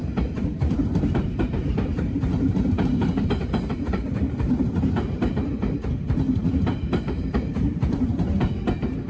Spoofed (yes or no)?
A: yes